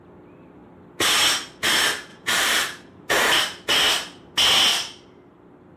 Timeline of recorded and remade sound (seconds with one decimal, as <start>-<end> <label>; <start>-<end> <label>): 0.0-2.1 recorded; 2.1-3.4 remade; 3.4-4.7 recorded; 4.7-5.8 remade